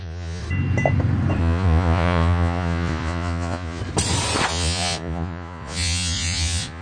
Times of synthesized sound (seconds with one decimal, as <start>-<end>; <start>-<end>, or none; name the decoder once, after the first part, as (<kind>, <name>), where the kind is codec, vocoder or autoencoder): 0.0-0.4 (vocoder, Vocos); 1.4-3.8; 4.5-6.8